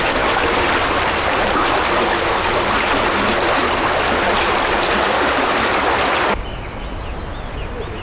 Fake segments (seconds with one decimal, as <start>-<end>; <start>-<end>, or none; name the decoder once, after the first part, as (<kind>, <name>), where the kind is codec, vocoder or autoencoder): 3.6-5.8 (vocoder, BigVGAN v2)